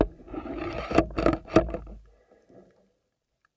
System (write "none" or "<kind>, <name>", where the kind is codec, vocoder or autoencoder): none